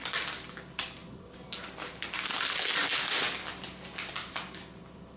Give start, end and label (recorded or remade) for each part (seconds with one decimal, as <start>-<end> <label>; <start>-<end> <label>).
0.0-5.2 recorded